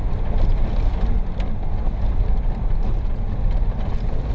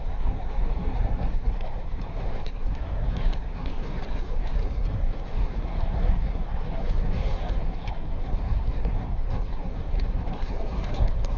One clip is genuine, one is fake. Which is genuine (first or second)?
first